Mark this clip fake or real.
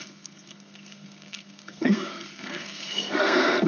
fake